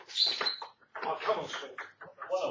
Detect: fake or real real